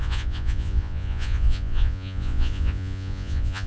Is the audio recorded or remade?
remade